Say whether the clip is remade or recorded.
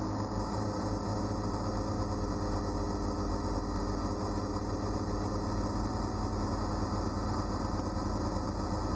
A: recorded